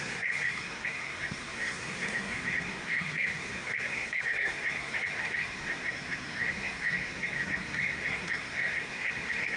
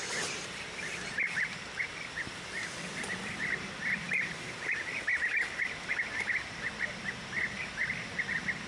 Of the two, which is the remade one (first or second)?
first